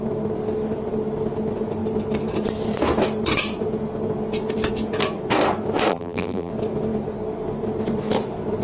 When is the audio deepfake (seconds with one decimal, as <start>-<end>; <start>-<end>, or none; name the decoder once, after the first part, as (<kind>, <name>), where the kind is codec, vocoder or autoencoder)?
5.9-6.5 (vocoder, BigVGAN v2)